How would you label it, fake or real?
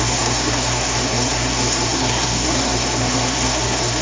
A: fake